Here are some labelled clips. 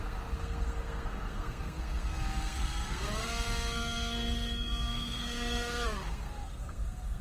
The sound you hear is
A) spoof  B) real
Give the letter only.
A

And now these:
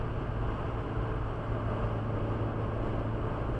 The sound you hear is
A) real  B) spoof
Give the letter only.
A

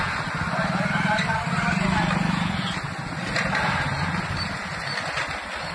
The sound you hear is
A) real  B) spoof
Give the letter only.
A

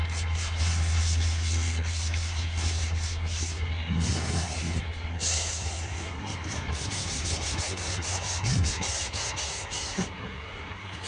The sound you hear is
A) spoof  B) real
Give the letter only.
A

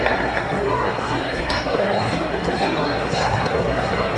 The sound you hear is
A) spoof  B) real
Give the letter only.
A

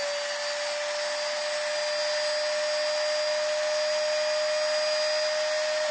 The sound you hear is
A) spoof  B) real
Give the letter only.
B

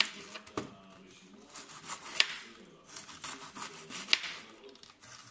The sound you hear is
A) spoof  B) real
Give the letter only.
B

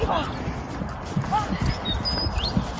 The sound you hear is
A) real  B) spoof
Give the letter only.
A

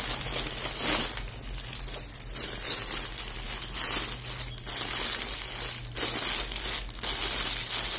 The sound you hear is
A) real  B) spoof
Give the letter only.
A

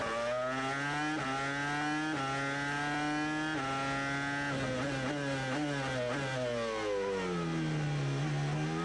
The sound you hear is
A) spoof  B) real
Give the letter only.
B